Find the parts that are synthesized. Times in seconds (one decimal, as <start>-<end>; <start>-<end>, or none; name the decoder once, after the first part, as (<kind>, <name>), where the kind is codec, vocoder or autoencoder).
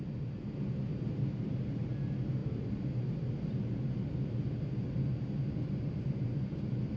none